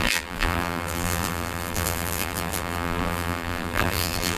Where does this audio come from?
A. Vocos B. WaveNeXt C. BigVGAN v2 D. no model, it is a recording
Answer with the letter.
C